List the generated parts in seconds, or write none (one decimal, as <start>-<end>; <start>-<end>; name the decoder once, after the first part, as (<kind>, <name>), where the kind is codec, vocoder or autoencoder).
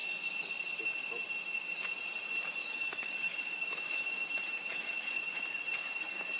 2.6-5.2 (autoencoder, DAC-VAE)